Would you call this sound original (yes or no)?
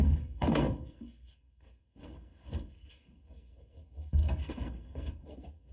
no